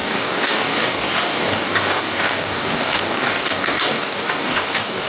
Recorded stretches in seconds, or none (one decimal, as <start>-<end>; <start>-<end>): none